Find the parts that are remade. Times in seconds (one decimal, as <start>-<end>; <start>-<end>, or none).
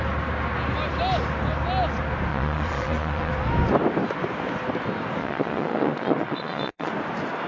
2.3-3.3; 5.2-6.9